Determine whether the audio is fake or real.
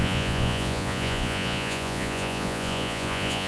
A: fake